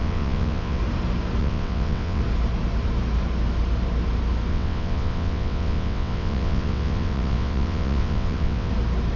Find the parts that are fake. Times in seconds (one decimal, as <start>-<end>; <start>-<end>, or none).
0.0-0.8; 1.4-2.2; 4.5-8.7